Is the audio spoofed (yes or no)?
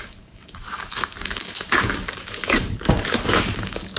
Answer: yes